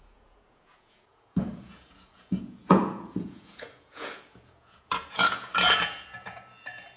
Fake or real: fake